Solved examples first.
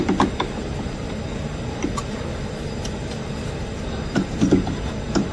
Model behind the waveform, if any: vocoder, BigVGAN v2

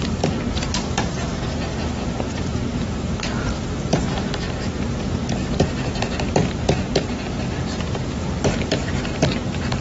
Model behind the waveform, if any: vocoder, BigVGAN v2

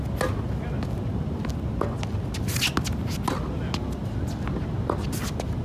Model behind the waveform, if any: none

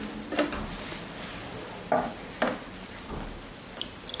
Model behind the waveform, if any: none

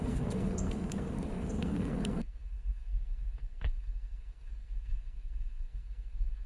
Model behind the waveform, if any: codec, SNAC